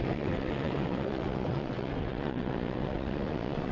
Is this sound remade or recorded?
remade